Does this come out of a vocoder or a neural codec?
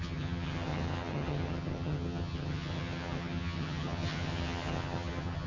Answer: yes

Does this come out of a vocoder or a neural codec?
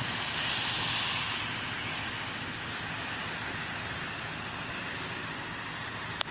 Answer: no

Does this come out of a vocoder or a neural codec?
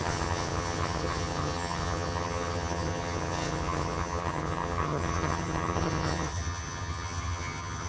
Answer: yes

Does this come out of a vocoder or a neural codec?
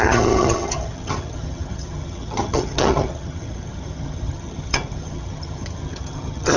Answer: yes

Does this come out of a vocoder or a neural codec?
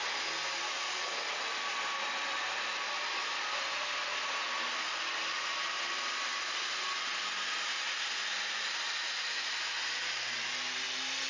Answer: no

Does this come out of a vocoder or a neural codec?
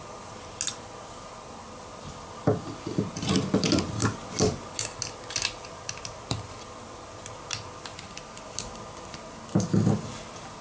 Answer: no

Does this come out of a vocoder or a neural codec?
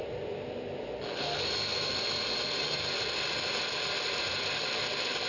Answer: no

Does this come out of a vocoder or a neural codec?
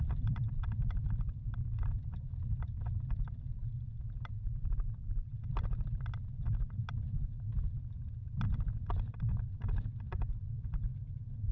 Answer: no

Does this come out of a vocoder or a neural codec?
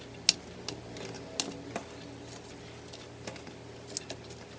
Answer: no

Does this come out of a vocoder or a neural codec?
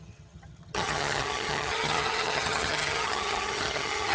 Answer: yes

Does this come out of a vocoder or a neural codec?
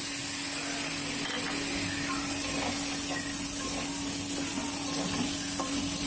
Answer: no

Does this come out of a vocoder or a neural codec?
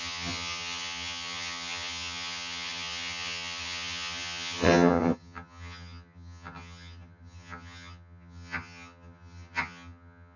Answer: yes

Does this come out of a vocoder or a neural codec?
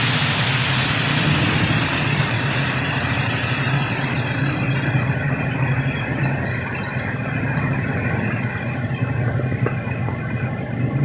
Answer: no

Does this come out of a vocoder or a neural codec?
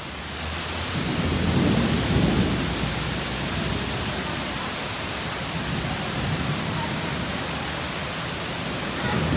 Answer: no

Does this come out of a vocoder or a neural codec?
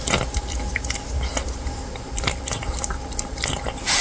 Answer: no